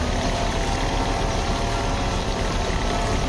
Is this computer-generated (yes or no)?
no